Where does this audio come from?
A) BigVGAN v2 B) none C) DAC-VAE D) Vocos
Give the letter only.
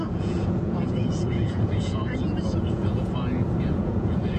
D